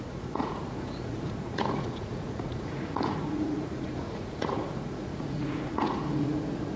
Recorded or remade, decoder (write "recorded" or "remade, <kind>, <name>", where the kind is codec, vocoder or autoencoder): remade, vocoder, Vocos